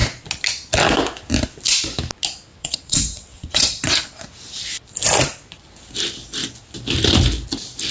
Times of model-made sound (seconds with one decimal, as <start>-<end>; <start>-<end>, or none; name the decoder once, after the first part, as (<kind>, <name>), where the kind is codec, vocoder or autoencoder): 2.5-3.7 (vocoder, WaveNeXt)

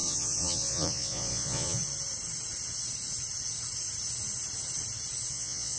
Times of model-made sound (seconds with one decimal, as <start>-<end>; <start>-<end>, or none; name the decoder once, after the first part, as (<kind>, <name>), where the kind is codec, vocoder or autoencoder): 0.0-1.8 (vocoder, Vocos); 5.3-5.8

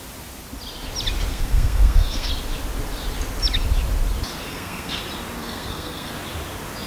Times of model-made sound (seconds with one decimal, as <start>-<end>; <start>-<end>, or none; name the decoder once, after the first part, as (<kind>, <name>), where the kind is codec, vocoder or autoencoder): 1.3-2.3 (codec, SNAC); 4.5-5.0; 5.4-6.1

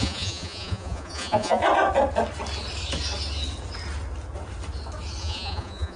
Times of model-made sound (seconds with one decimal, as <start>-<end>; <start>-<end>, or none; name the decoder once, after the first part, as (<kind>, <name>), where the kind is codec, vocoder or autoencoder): 0.0-1.6 (vocoder, Vocos); 5.2-6.0

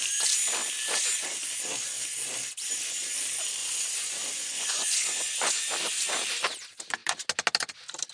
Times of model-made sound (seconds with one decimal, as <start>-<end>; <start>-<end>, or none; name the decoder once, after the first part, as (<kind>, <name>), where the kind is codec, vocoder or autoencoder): 3.6-5.5 (vocoder, Vocos)